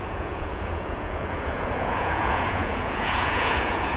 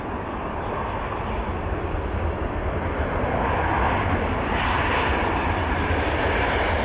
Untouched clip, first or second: second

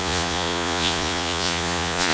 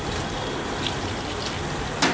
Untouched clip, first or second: second